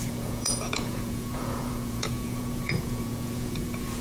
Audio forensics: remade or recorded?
remade